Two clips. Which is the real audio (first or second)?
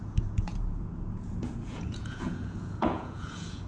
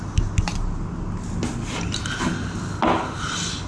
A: second